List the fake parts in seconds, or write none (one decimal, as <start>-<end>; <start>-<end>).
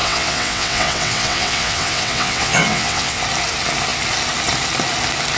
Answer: 0.0-3.2